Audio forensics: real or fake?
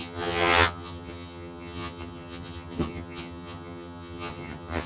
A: fake